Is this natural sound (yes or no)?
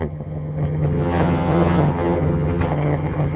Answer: no